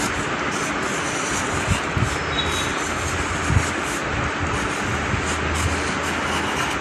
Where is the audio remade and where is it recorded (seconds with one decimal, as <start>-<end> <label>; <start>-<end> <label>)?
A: 0.0-6.8 recorded